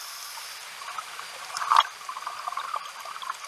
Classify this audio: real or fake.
real